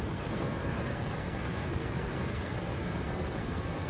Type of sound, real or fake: fake